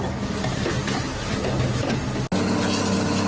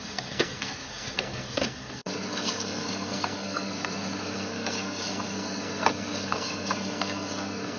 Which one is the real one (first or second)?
first